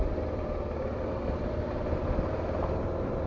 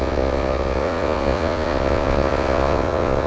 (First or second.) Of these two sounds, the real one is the first